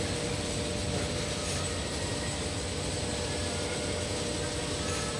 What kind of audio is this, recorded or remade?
recorded